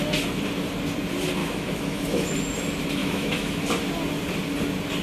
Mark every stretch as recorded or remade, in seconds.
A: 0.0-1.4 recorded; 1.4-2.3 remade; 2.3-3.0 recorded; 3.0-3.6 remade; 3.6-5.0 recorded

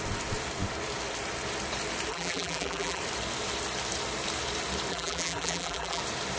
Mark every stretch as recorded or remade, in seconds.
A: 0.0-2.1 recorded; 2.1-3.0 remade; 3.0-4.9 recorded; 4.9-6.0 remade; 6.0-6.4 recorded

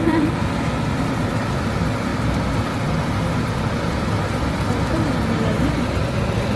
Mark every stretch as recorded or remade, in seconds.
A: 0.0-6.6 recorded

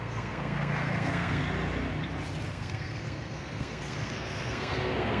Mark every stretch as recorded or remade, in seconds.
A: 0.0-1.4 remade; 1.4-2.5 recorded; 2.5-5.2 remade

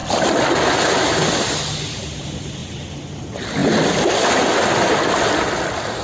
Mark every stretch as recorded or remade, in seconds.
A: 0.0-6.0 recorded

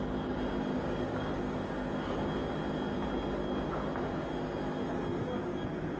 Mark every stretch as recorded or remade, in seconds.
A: 0.0-0.7 recorded; 0.7-1.7 remade; 1.7-6.0 recorded